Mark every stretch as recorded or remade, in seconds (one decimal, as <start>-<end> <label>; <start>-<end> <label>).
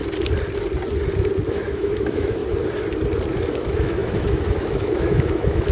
0.0-1.5 recorded; 1.5-2.4 remade; 2.4-3.5 recorded; 3.5-5.7 remade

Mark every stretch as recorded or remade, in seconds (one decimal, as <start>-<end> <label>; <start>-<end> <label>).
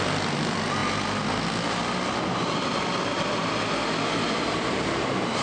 0.0-5.4 recorded